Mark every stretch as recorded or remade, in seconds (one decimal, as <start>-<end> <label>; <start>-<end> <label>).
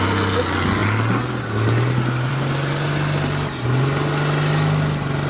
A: 0.0-5.3 recorded